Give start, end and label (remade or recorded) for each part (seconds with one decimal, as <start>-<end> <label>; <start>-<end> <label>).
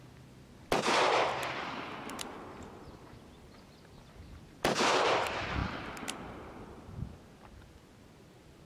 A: 0.0-8.7 recorded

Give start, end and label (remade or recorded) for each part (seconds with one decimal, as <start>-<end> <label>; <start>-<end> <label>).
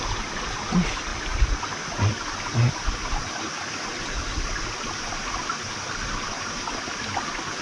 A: 0.0-4.2 recorded; 4.2-4.7 remade; 4.7-7.6 recorded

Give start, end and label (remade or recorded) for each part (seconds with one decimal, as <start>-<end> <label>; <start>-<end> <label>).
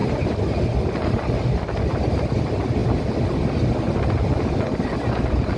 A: 0.0-5.6 recorded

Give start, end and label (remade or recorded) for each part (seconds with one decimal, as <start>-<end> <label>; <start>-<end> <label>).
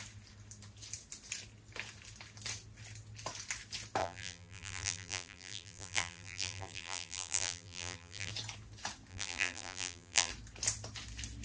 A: 0.0-4.0 recorded; 4.0-8.3 remade; 8.3-9.1 recorded; 9.1-10.3 remade; 10.3-11.4 recorded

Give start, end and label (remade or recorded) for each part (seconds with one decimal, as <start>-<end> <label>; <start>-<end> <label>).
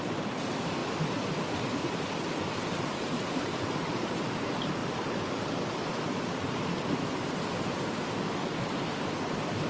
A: 0.0-0.8 remade; 0.8-2.7 recorded; 2.7-4.8 remade; 4.8-9.7 recorded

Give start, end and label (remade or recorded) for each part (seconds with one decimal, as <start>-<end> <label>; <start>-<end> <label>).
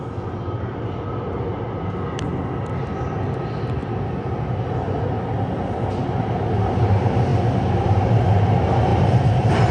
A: 0.0-3.8 recorded; 3.8-4.4 remade; 4.4-8.9 recorded; 8.9-9.7 remade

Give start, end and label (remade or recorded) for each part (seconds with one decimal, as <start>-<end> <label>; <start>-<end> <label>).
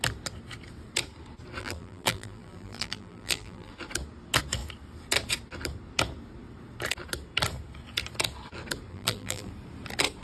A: 0.0-1.6 recorded; 1.6-3.7 remade; 3.7-8.9 recorded; 8.9-9.5 remade; 9.5-10.2 recorded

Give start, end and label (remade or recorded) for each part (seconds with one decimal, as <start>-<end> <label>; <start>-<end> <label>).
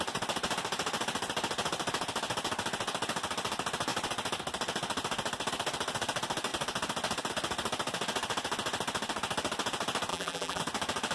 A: 0.0-10.1 recorded; 10.1-10.6 remade; 10.6-11.1 recorded